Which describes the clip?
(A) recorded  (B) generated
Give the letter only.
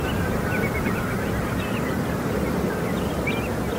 A